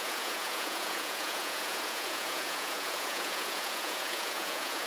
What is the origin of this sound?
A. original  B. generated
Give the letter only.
B